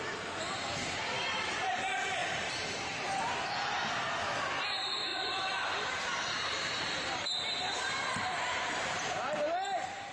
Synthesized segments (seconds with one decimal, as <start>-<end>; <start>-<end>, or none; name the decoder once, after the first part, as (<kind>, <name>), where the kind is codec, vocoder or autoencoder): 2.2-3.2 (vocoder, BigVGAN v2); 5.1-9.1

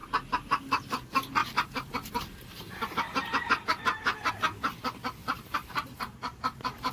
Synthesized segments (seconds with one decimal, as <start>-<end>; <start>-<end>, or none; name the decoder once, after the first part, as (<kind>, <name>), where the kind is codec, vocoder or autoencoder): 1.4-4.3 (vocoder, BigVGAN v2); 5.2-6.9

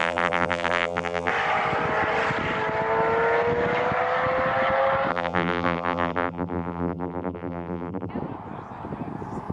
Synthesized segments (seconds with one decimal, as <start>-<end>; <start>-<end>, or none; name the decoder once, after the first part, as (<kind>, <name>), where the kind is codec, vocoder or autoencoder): 0.0-1.3 (vocoder, BigVGAN v2); 5.1-8.1

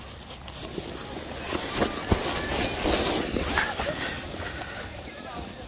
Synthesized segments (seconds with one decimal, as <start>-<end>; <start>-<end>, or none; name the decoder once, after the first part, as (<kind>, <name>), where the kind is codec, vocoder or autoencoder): 4.9-5.7 (vocoder, BigVGAN v2)

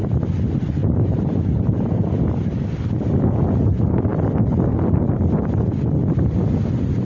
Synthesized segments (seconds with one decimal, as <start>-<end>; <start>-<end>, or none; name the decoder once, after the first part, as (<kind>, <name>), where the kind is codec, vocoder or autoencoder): 0.8-2.1 (vocoder, BigVGAN v2)

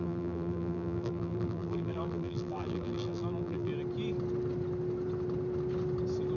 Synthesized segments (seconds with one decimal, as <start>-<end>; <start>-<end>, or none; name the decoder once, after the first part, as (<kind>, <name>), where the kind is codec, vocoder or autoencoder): 0.0-3.7 (vocoder, BigVGAN v2)